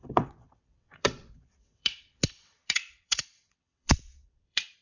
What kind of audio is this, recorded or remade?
remade